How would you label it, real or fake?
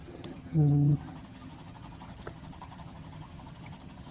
fake